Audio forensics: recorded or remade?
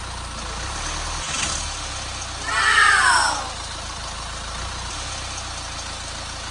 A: recorded